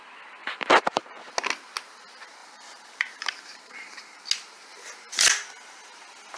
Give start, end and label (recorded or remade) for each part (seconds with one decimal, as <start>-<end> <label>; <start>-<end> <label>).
0.0-0.4 recorded; 0.4-1.3 remade; 1.3-2.4 recorded; 2.4-4.2 remade; 4.2-6.4 recorded